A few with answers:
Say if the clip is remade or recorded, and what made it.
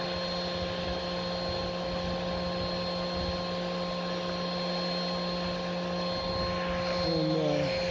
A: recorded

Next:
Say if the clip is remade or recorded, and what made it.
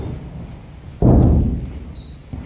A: recorded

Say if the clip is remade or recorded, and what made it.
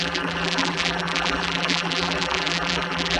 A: remade, vocoder, BigVGAN v2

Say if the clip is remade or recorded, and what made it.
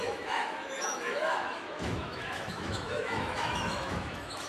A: remade, autoencoder, DAC-VAE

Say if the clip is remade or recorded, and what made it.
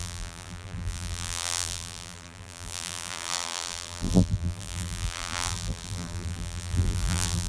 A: remade, vocoder, BigVGAN v2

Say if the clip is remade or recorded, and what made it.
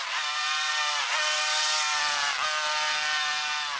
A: recorded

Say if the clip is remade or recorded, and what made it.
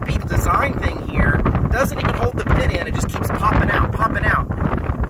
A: recorded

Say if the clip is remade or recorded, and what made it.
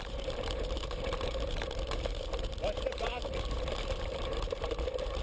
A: remade, vocoder, BigVGAN v2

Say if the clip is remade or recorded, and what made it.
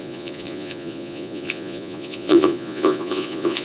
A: remade, vocoder, Vocos